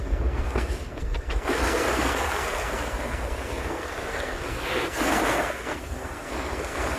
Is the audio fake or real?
fake